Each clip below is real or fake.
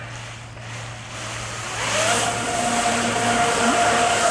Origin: real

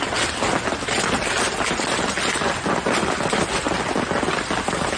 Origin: real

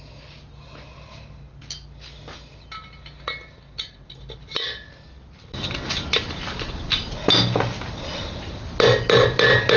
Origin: real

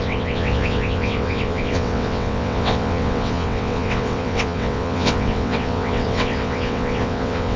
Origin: fake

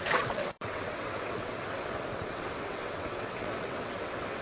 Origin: fake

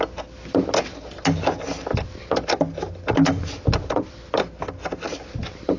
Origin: real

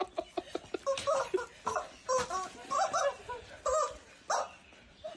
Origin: real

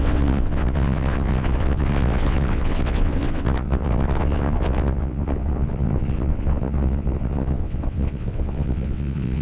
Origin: fake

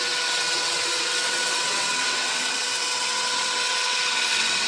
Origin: fake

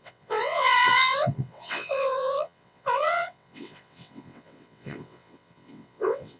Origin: fake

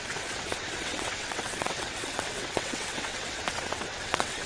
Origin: fake